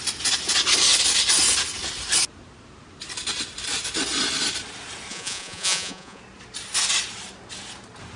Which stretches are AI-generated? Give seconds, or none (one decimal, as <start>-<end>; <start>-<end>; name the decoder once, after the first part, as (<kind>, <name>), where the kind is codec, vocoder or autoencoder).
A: 5.1-6.2 (vocoder, Vocos)